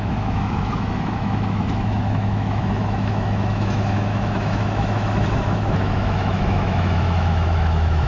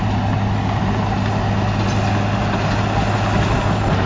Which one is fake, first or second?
first